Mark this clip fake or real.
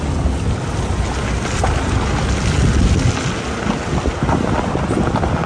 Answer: real